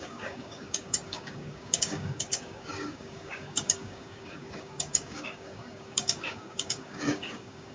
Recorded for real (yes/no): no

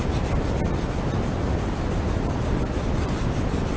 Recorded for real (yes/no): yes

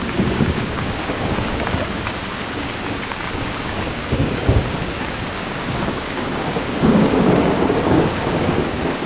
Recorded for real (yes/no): no